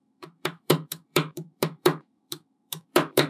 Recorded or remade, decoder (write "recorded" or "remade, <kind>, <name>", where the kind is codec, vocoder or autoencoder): remade, autoencoder, DAC-VAE